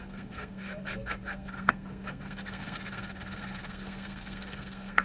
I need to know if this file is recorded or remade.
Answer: remade